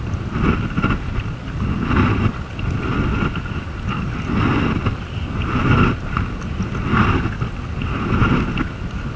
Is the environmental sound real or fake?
real